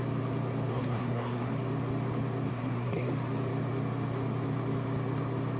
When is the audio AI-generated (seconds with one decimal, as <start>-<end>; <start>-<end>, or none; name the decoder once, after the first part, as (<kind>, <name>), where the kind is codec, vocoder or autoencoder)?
0.7-1.5 (codec, SNAC); 2.5-3.1